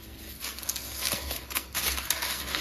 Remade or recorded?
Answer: remade